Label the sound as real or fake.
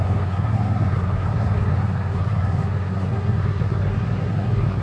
fake